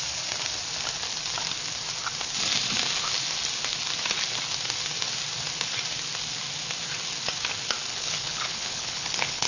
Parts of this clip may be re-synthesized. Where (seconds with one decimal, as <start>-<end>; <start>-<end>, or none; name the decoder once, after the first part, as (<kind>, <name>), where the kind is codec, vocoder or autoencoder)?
7.9-9.5 (codec, HILCodec)